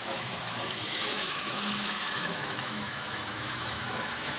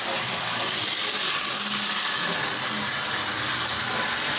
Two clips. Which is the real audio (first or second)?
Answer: second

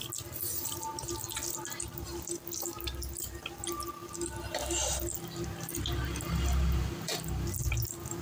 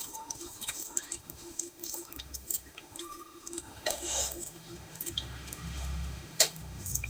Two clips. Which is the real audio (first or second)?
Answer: first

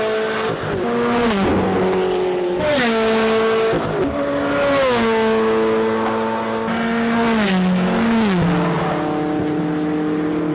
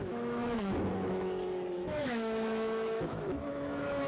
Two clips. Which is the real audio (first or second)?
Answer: first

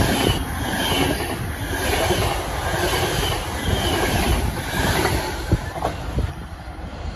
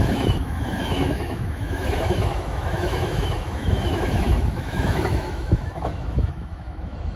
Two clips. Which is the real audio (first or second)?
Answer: first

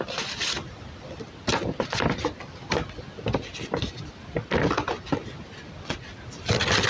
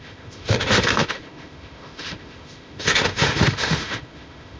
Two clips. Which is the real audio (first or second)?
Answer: first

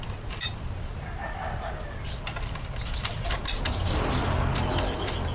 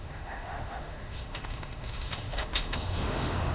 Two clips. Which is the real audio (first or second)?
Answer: first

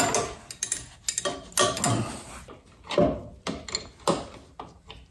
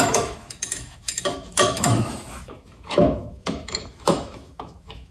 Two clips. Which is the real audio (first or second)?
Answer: first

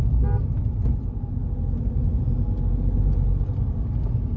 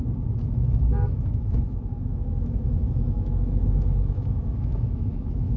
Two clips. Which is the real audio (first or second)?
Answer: first